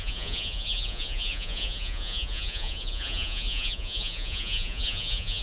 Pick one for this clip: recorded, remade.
remade